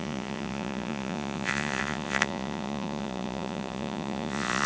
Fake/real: fake